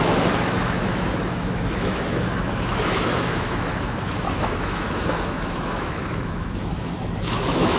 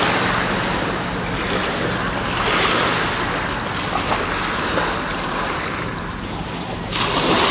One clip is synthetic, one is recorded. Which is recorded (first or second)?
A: second